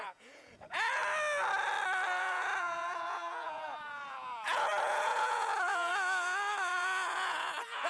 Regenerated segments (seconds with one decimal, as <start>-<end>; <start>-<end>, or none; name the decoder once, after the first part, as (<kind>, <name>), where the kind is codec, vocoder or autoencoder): 0.0-1.0 (vocoder, Vocos); 2.2-5.9; 6.7-7.9